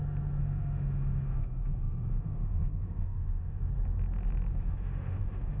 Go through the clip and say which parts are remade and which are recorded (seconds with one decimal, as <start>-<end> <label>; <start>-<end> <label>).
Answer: 0.0-0.4 recorded; 0.4-3.7 remade; 3.7-4.5 recorded; 4.5-5.6 remade